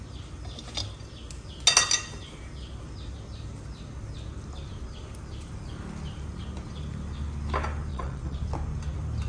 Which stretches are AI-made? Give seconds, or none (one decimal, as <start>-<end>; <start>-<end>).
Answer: 7.9-8.4